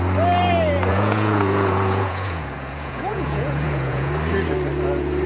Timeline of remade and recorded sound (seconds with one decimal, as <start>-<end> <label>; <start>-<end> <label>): 0.0-0.9 recorded; 0.9-4.1 remade; 4.1-5.3 recorded